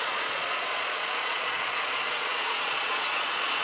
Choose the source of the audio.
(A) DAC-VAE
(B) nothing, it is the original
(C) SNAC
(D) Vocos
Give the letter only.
D